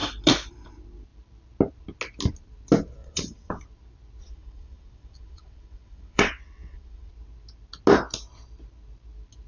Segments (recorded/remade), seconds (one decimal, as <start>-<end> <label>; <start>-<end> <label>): 0.0-3.0 recorded; 3.0-3.6 remade; 3.6-4.2 recorded; 4.2-7.1 remade; 7.1-9.5 recorded